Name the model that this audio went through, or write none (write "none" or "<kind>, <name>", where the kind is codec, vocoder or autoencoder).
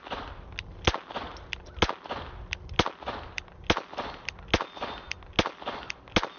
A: none